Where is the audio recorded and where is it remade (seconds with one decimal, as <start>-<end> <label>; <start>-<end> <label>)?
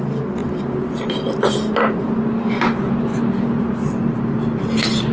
0.0-5.1 recorded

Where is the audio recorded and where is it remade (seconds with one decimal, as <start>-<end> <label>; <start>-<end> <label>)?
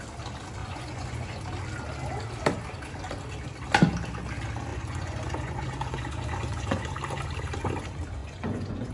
0.0-0.6 recorded; 0.6-1.4 remade; 1.4-4.7 recorded; 4.7-6.9 remade; 6.9-8.2 recorded; 8.2-8.9 remade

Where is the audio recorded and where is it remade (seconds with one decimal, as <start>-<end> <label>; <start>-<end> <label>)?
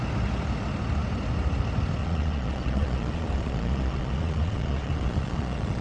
0.0-2.0 recorded; 2.0-5.8 remade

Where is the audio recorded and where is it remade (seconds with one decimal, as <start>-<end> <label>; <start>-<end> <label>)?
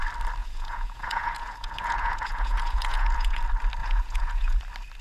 0.0-0.4 recorded; 0.4-3.4 remade; 3.4-3.8 recorded; 3.8-4.6 remade; 4.6-5.0 recorded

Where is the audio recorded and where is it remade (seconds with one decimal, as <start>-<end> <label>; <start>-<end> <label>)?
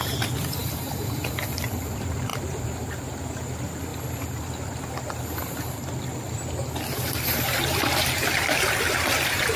0.0-9.6 recorded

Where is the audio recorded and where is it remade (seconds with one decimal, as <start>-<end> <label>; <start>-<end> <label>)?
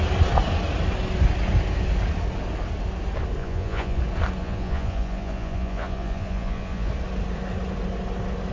0.0-3.4 recorded; 3.4-4.0 remade; 4.0-4.4 recorded; 4.4-6.9 remade; 6.9-8.5 recorded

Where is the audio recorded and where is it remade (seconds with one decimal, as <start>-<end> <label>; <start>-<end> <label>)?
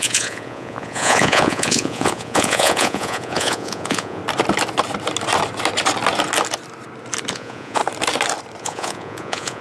0.0-4.2 remade; 4.2-7.3 recorded; 7.3-7.8 remade; 7.8-8.6 recorded; 8.6-9.6 remade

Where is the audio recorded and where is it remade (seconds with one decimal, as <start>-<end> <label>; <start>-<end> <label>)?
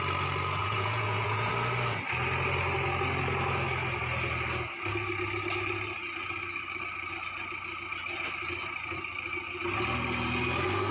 0.0-0.6 recorded; 0.6-1.5 remade; 1.5-10.9 recorded